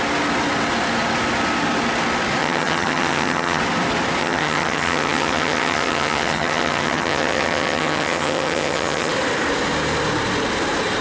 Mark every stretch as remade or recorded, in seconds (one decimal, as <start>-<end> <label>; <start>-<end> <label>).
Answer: 0.0-2.4 recorded; 2.4-3.6 remade; 3.6-4.2 recorded; 4.2-9.1 remade; 9.1-11.0 recorded